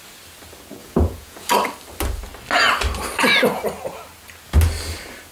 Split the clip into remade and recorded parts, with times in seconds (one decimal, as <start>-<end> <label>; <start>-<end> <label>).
0.0-0.8 recorded; 0.8-1.5 remade; 1.5-5.3 recorded